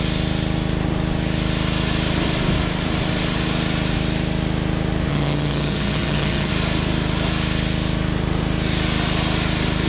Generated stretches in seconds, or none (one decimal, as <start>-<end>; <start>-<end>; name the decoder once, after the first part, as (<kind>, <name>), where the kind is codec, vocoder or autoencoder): 5.1-6.5 (vocoder, HiFi-GAN)